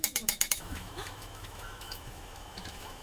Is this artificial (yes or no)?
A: yes